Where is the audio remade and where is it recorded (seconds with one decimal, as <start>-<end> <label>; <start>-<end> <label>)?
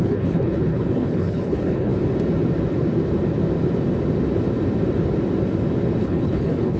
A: 0.0-1.9 remade; 1.9-6.0 recorded; 6.0-6.8 remade